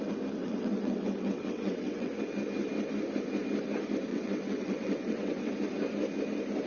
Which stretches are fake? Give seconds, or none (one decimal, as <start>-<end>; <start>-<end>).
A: 0.4-2.1; 4.1-5.5

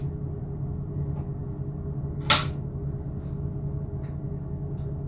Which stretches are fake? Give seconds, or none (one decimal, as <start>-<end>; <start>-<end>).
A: none

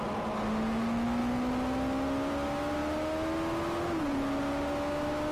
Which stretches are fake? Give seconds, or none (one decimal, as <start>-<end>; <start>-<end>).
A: none

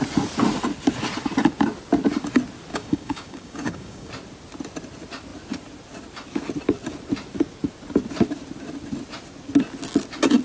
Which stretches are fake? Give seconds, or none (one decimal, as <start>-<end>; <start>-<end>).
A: 2.7-4.1

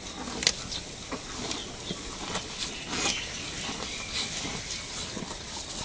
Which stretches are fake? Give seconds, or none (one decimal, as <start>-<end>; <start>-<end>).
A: none

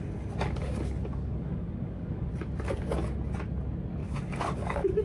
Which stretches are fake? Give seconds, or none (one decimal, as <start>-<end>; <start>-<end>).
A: 1.0-2.3; 4.0-5.0